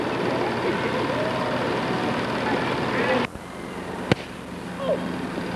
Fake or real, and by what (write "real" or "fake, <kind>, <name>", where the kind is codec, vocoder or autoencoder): real